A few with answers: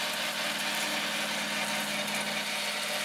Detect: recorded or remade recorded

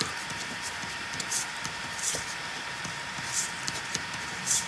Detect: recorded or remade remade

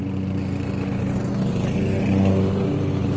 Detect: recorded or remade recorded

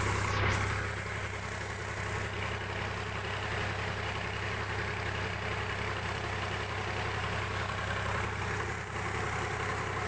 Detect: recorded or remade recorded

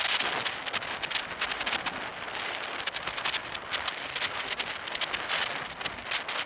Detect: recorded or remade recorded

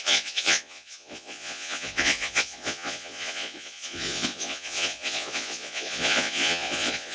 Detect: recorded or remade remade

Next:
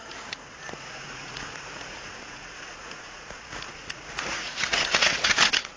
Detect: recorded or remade remade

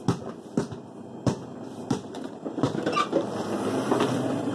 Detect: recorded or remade recorded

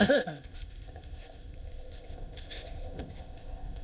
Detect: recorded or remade remade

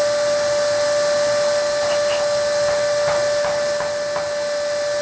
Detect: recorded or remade recorded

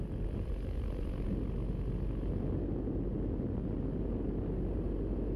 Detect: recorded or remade recorded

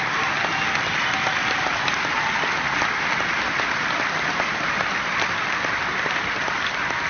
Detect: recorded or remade recorded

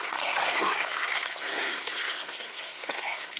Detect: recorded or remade remade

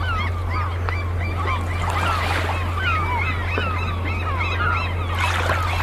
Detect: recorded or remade recorded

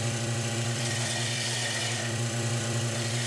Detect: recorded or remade remade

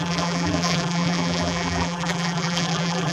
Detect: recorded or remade remade